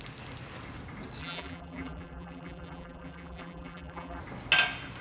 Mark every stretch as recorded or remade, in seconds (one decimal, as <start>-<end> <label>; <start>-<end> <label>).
0.0-1.2 recorded; 1.2-4.2 remade; 4.2-5.0 recorded